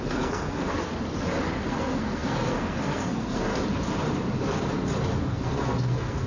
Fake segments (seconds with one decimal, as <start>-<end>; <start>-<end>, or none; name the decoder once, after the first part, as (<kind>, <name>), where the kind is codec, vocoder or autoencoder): 0.0-0.9 (codec, SNAC); 1.6-3.5; 5.2-6.3